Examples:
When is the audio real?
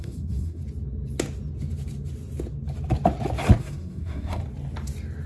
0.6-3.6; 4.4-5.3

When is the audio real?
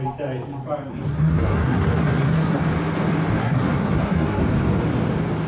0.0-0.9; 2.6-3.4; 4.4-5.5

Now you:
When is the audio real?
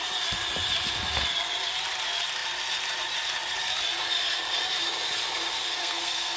0.0-5.8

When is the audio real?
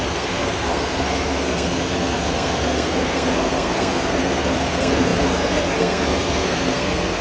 none